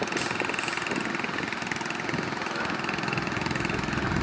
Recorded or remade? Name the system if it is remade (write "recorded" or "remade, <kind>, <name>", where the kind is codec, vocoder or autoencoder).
recorded